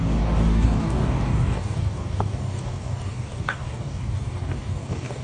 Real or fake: fake